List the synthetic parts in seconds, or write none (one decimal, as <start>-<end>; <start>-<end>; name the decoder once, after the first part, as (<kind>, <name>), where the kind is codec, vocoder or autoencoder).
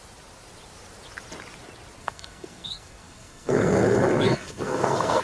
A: 2.0-5.2 (codec, SNAC)